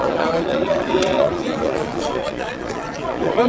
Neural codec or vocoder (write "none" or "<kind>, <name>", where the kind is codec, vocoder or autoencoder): vocoder, Vocos